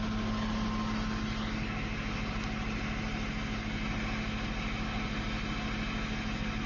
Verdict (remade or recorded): recorded